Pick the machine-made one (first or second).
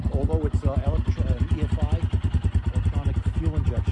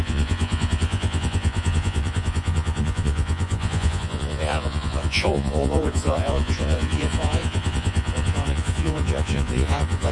second